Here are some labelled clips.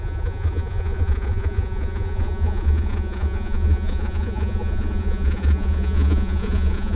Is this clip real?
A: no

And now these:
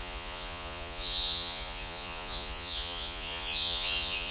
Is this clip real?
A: no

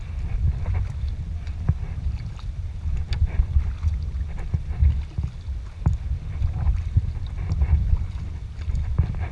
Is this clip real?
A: yes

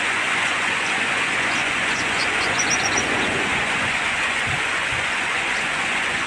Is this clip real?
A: no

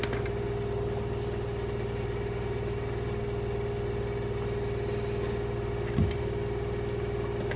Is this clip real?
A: yes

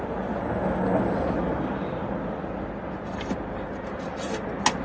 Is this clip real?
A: yes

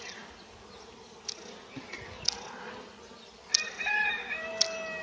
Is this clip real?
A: yes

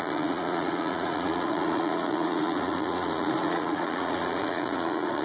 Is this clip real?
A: no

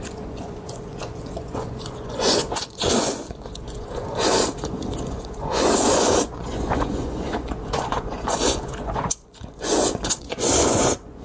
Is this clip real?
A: no